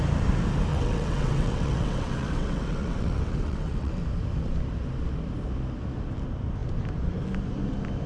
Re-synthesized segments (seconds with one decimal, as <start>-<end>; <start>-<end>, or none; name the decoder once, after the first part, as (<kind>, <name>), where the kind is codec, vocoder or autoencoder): 0.7-4.0 (vocoder, WaveNeXt)

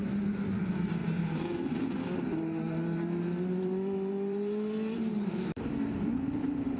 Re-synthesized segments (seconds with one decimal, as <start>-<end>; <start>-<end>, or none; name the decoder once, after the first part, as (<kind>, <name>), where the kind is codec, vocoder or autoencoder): 0.0-6.8 (vocoder, BigVGAN v2)

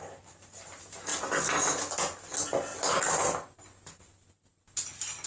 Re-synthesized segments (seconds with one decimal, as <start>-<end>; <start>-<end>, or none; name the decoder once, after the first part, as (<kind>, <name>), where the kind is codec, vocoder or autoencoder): none

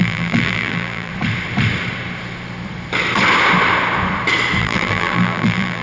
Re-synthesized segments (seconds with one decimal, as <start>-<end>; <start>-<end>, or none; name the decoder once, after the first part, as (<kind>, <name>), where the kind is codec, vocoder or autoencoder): 0.0-1.1 (vocoder, BigVGAN v2); 4.6-5.8

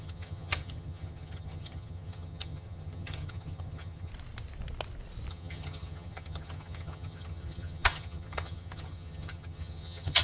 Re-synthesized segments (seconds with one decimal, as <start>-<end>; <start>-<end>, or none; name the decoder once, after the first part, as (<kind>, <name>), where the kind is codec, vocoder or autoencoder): 0.0-4.1 (vocoder, HiFi-GAN); 5.3-10.2

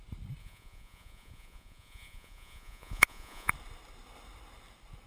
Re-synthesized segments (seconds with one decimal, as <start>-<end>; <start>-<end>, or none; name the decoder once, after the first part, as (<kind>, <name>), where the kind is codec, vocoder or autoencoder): 0.4-3.5 (vocoder, Vocos)